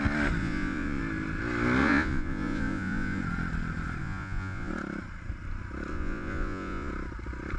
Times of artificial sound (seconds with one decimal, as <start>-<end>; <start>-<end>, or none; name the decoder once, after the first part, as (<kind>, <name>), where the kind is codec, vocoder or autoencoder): 0.4-1.0 (vocoder, Vocos); 1.8-3.2; 4.0-4.7; 5.9-6.9